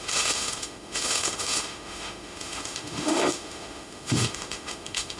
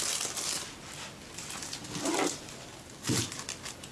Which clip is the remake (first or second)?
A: first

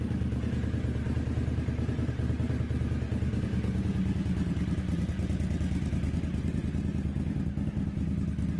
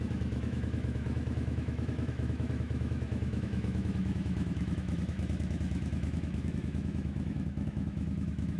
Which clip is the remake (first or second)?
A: second